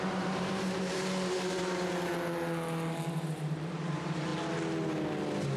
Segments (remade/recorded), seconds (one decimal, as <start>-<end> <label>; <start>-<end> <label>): 0.0-2.1 remade; 2.1-3.1 recorded; 3.1-4.3 remade; 4.3-5.6 recorded